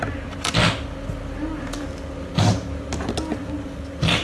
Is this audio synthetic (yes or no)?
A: no